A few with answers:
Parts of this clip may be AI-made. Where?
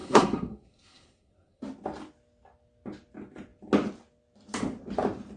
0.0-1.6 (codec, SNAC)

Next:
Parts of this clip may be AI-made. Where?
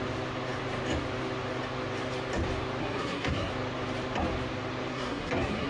2.8-3.5 (codec, SNAC); 4.9-5.7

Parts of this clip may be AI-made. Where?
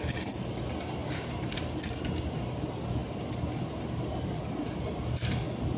none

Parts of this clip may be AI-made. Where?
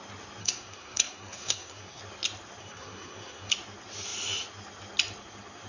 0.4-2.0 (codec, SNAC); 2.6-3.5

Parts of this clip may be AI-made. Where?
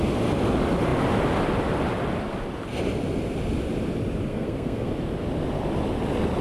4.3-4.9 (codec, SNAC)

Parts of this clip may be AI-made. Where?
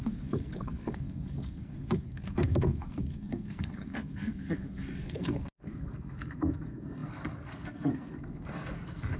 0.0-9.2 (codec, SNAC)